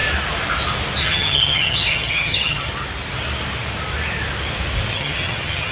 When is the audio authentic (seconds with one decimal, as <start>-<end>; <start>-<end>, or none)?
0.0-1.0; 2.7-4.9